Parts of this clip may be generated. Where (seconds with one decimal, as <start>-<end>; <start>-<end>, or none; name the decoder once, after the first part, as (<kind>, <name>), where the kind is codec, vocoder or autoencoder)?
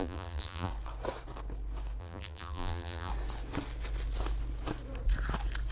0.0-0.7 (vocoder, BigVGAN v2); 2.0-3.1